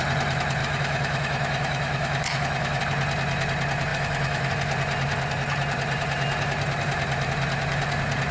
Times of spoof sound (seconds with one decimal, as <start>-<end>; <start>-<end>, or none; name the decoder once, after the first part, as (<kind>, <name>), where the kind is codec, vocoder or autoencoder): 0.6-2.8 (autoencoder, DAC-VAE); 3.9-4.5